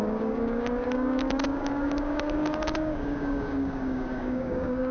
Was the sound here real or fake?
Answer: fake